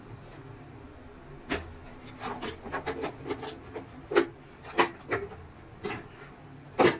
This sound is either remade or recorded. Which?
recorded